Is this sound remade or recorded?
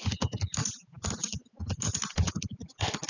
recorded